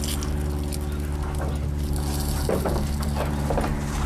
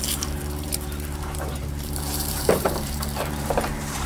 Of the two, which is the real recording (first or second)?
first